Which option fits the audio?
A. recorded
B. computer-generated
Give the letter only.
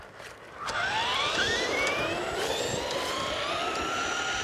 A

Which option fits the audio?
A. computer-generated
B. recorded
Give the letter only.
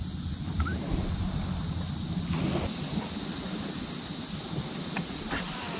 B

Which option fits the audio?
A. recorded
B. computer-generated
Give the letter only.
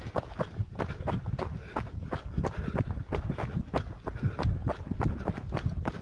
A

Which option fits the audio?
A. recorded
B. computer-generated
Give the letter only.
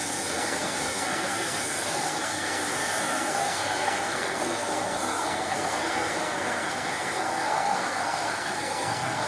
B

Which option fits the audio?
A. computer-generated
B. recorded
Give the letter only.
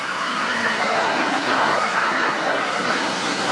A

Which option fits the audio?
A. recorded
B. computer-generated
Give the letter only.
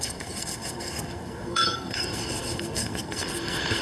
B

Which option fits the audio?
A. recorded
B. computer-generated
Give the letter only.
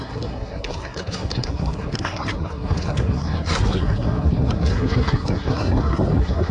B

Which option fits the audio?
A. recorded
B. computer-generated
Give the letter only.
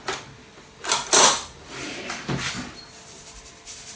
A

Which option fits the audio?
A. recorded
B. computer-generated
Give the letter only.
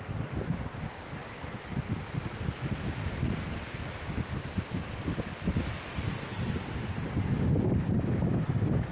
A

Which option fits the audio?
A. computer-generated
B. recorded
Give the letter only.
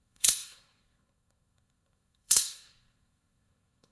A